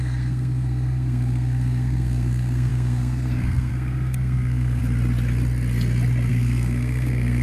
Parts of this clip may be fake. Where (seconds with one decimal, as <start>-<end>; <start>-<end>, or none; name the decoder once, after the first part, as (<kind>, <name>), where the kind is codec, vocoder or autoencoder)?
0.0-4.8 (codec, SNAC); 6.3-7.4